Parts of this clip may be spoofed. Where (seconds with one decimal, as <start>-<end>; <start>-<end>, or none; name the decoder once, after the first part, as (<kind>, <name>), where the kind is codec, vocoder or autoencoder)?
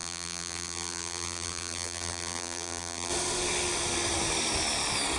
0.0-3.1 (vocoder, BigVGAN v2)